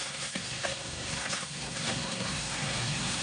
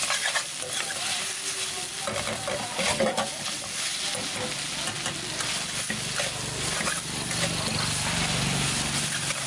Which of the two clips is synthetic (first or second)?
first